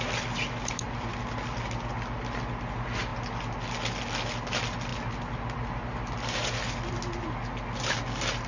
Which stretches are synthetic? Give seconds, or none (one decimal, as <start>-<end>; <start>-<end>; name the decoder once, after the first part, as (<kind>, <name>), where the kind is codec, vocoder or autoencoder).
none